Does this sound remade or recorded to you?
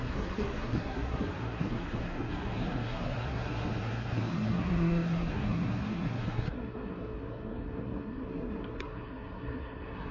remade